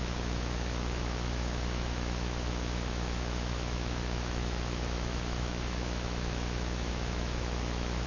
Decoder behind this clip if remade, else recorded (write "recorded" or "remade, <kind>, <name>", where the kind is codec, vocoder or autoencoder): remade, autoencoder, DAC-VAE